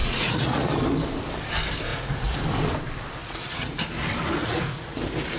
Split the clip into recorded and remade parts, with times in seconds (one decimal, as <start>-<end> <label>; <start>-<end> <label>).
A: 0.0-0.7 remade; 0.7-1.9 recorded; 1.9-2.4 remade; 2.4-3.2 recorded; 3.2-3.7 remade; 3.7-4.4 recorded; 4.4-5.0 remade; 5.0-5.4 recorded

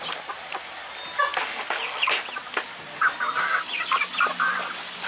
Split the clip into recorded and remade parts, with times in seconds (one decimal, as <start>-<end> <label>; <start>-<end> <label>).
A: 0.0-5.1 recorded